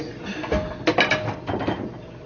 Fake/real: real